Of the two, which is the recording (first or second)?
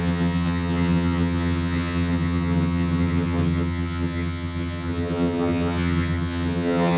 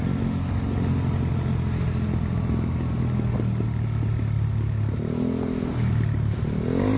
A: second